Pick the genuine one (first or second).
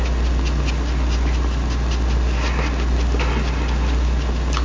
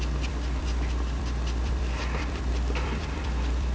first